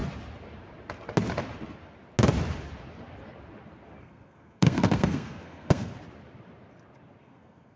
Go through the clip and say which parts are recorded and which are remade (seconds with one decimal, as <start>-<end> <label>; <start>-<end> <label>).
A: 0.0-4.0 recorded; 4.0-5.9 remade; 5.9-7.2 recorded; 7.2-7.8 remade